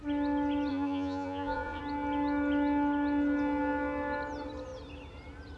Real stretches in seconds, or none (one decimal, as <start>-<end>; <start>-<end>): 0.0-0.7; 1.8-5.6